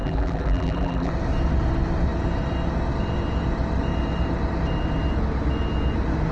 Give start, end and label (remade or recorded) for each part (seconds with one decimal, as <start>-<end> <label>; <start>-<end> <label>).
0.0-1.1 remade; 1.1-6.3 recorded